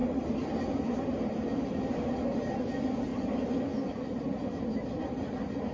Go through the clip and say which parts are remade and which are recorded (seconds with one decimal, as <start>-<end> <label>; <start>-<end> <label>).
0.0-5.7 recorded